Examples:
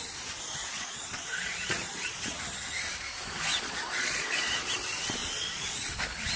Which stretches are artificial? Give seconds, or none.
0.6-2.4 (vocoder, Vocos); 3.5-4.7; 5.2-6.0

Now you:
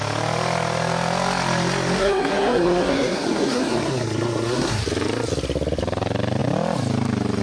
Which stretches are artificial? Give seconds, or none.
2.0-4.8 (codec, SNAC)

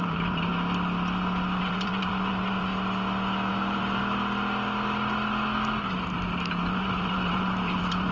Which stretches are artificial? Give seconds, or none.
0.0-0.5 (vocoder, BigVGAN v2); 1.6-2.7; 3.5-4.0; 6.5-8.1

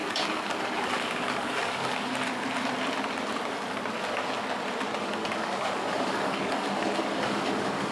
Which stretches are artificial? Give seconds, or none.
0.0-2.1 (codec, DAC); 5.0-7.9

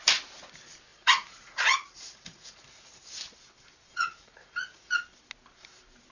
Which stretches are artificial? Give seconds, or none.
0.9-3.2 (vocoder, Vocos); 3.9-4.9